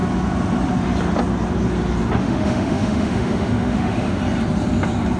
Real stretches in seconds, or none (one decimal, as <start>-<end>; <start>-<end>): 0.0-2.2; 4.2-5.2